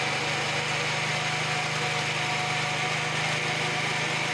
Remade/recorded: recorded